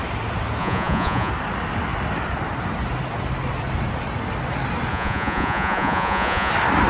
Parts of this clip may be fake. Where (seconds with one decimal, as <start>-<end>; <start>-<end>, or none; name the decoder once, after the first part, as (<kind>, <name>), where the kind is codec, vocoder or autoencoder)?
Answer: 0.6-1.3 (vocoder, Vocos); 4.9-6.5